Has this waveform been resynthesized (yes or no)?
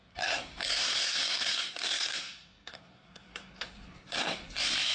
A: yes